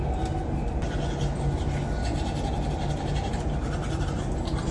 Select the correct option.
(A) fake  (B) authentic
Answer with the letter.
B